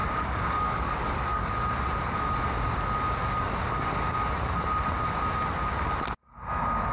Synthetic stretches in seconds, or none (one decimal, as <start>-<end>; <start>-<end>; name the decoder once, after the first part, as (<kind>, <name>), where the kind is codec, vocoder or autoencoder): 0.0-1.5 (codec, DAC)